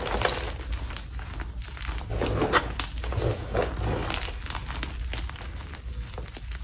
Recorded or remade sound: recorded